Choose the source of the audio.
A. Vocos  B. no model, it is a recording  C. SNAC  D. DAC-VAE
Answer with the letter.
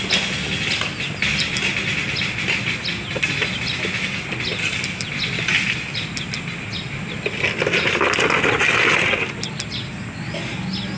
B